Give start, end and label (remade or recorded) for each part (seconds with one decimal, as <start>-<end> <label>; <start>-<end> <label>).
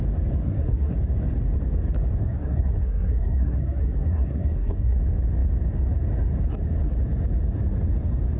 0.0-0.4 recorded; 0.4-0.9 remade; 0.9-2.2 recorded; 2.2-5.0 remade; 5.0-8.4 recorded